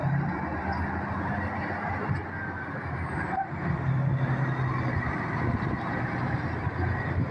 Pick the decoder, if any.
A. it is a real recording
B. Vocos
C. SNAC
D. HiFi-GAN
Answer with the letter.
A